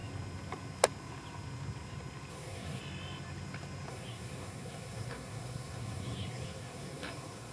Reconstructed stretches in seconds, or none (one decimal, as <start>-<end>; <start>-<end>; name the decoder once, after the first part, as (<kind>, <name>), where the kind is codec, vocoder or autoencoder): 2.3-2.8 (codec, SNAC); 3.9-7.5